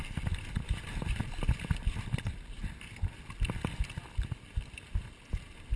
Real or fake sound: real